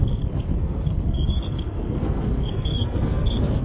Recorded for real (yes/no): no